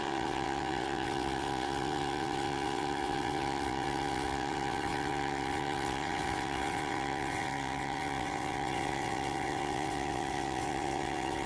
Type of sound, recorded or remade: remade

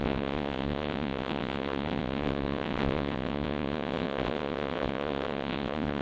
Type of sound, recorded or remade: remade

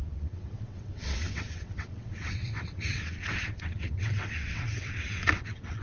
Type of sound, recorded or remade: remade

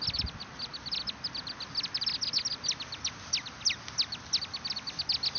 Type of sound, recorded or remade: recorded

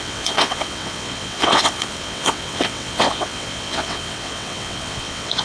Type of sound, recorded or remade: remade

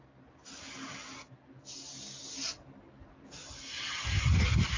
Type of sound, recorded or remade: recorded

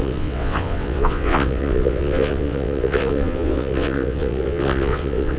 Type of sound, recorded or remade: remade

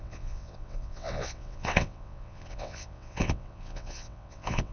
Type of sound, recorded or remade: remade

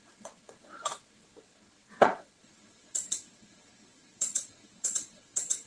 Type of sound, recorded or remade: remade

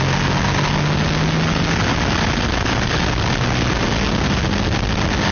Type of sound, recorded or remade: recorded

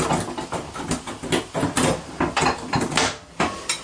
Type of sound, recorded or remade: recorded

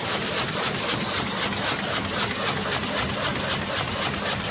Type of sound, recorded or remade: recorded